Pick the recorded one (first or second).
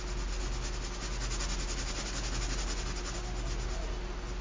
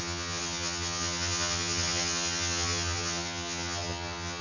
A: first